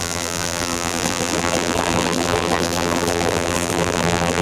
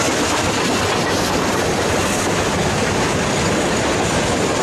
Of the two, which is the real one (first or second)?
second